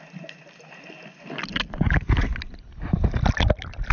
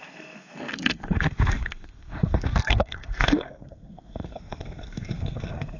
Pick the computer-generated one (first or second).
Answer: second